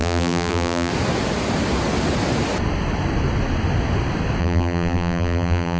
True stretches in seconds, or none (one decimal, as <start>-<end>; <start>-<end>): 0.9-4.4